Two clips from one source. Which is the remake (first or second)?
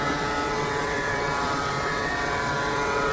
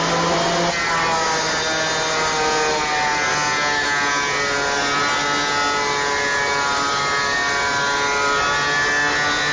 first